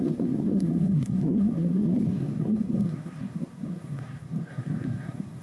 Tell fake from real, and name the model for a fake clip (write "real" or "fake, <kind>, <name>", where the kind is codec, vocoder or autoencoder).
fake, codec, SNAC